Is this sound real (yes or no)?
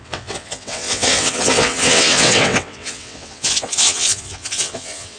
no